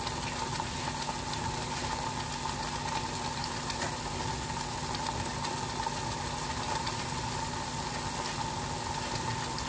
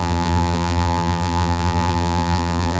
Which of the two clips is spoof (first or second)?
second